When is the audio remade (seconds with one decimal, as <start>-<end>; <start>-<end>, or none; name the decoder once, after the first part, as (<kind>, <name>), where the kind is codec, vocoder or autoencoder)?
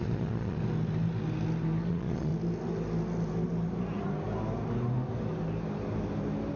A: 0.0-0.6 (vocoder, Vocos); 1.9-2.3